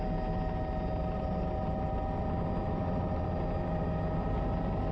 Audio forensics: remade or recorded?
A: recorded